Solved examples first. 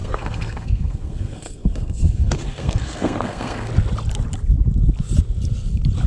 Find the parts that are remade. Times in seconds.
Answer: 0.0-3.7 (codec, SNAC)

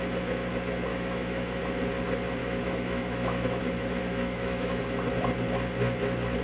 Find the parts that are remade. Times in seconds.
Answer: 0.9-1.6 (autoencoder, DAC-VAE); 2.4-3.6; 4.0-4.8

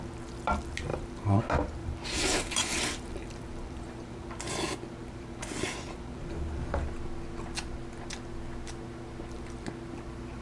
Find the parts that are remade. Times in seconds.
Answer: 0.9-1.4 (vocoder, BigVGAN v2); 1.8-4.3; 5.0-6.7

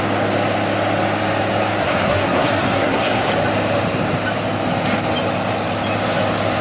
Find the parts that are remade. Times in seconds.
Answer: 1.8-3.3 (codec, SNAC)